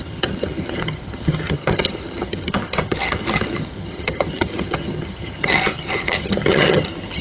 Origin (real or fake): fake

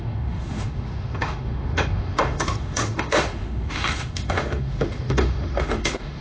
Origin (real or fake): fake